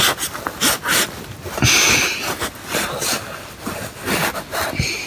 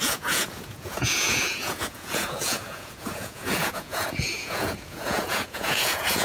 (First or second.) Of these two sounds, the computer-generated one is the second